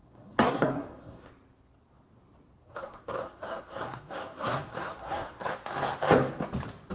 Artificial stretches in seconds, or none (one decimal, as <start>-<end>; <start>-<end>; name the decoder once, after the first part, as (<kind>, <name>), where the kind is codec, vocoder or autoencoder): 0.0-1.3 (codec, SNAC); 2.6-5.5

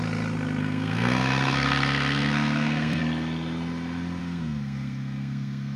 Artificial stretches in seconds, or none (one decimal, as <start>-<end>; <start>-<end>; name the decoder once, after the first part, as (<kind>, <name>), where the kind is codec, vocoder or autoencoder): 0.6-3.0 (codec, SNAC); 4.2-5.8

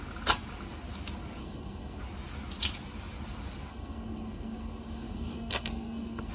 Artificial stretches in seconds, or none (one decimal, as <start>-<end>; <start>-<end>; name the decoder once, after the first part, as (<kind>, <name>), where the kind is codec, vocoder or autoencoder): 1.4-2.0 (codec, SNAC); 3.7-6.3